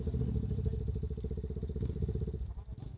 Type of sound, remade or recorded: recorded